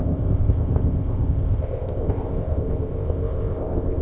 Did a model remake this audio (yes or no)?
yes